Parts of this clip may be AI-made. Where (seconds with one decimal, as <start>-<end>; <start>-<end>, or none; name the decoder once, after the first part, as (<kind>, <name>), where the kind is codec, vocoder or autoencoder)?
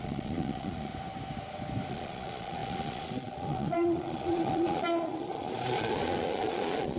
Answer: 0.0-0.9 (vocoder, Vocos); 1.9-7.0